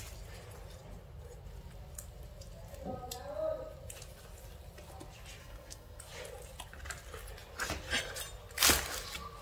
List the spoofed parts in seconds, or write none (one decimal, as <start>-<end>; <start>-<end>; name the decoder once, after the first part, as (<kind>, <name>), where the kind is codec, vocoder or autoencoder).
5.4-6.0 (codec, SNAC)